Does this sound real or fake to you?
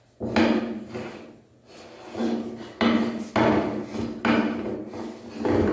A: real